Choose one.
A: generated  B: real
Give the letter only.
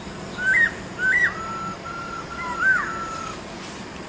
B